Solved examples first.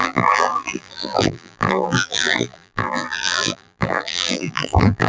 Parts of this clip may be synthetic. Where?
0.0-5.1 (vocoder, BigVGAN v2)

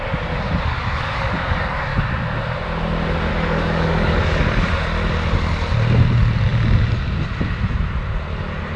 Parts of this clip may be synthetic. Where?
0.7-2.1 (codec, DAC); 3.3-4.7

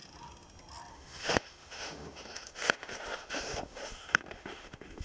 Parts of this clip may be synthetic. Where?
0.9-5.0 (autoencoder, DAC-VAE)